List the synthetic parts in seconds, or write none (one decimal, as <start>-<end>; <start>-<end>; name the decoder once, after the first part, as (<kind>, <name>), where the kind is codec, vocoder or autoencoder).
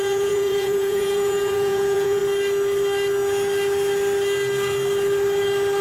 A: 0.0-2.2 (vocoder, Vocos)